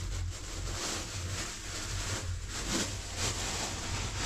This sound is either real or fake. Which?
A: real